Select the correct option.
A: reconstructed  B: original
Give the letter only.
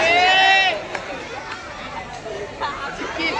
B